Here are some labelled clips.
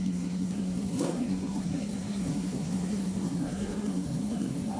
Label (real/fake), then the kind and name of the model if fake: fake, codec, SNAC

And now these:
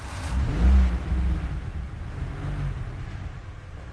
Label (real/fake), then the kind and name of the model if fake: real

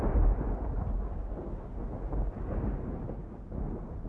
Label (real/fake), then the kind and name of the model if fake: real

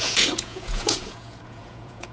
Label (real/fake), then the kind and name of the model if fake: fake, vocoder, Vocos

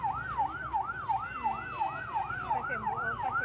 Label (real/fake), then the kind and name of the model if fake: real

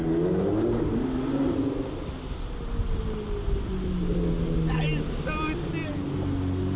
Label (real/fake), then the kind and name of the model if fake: real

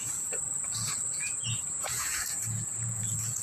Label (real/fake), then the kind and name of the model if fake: fake, vocoder, Vocos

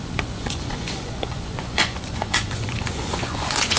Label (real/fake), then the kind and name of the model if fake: fake, vocoder, Vocos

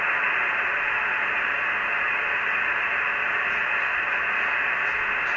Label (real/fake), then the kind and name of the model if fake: real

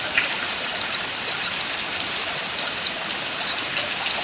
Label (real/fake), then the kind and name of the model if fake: real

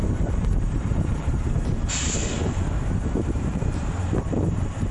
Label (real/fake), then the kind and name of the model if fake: fake, vocoder, BigVGAN v2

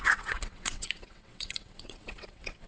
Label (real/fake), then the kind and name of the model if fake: fake, vocoder, WaveNeXt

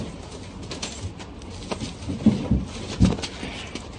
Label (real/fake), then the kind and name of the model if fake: real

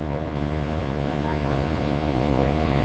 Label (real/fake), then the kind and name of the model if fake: fake, vocoder, Vocos